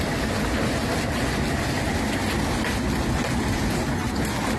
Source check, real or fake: real